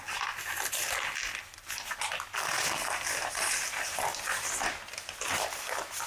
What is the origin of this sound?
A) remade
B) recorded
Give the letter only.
B